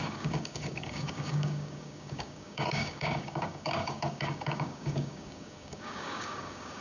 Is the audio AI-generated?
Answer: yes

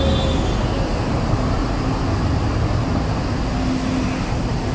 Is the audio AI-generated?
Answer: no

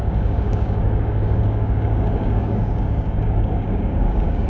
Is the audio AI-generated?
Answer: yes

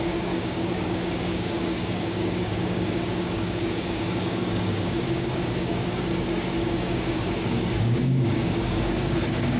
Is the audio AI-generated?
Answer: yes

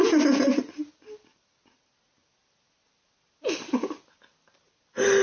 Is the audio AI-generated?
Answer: no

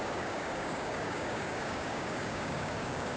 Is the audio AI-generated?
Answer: yes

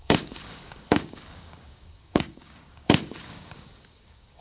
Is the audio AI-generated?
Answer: yes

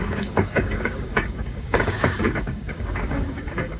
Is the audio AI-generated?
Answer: yes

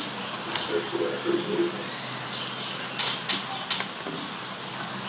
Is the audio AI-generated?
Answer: no